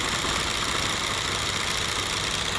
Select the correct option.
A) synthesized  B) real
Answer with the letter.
B